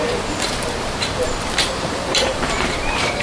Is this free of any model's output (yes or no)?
no